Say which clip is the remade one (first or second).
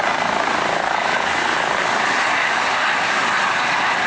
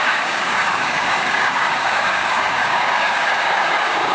second